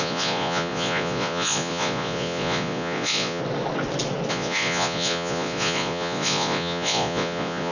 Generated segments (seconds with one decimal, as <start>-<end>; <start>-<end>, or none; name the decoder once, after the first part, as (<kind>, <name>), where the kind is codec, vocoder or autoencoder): 0.0-3.4 (vocoder, Vocos); 4.3-7.7